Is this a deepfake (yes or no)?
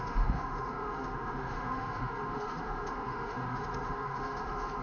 yes